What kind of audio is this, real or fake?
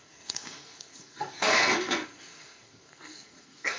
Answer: fake